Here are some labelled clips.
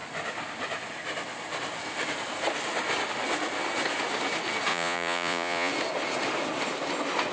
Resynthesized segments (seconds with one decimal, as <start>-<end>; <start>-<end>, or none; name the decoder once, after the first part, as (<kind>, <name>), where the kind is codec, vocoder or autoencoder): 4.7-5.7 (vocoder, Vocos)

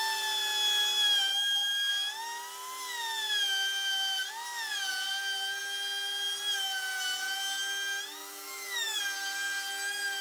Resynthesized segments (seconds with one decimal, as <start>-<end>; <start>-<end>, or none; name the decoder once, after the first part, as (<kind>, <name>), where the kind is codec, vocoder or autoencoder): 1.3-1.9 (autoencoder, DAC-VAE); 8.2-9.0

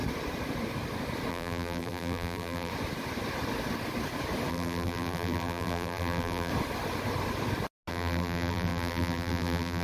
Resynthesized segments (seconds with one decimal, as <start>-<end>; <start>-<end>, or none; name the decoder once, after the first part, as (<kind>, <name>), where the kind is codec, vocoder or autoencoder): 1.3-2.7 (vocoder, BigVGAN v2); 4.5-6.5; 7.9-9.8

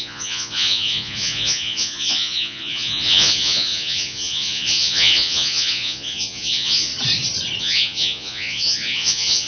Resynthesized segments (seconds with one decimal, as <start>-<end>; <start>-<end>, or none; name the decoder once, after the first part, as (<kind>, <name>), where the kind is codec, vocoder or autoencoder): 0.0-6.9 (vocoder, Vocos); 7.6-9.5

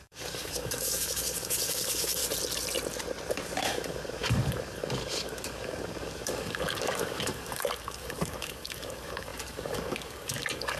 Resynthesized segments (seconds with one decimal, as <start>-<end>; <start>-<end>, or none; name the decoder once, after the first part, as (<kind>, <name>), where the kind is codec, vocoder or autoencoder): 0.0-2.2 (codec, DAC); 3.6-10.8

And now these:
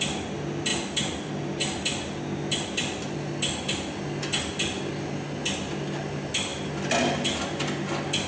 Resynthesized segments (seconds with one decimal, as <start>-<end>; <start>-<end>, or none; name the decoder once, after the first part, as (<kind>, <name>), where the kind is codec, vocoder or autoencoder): none

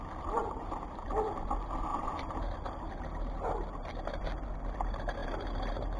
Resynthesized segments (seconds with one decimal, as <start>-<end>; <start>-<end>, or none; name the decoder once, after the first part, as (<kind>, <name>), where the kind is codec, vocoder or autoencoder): 0.4-1.1 (vocoder, BigVGAN v2); 1.9-2.4